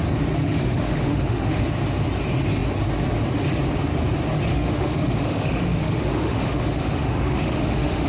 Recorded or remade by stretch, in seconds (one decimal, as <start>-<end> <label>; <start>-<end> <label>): 0.0-0.4 recorded; 0.4-1.6 remade; 1.6-4.5 recorded; 4.5-8.1 remade